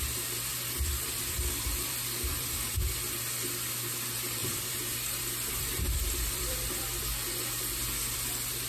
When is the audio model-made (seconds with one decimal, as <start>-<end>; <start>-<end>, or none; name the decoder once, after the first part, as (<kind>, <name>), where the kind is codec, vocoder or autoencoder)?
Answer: 0.5-2.9 (vocoder, BigVGAN v2); 4.4-7.0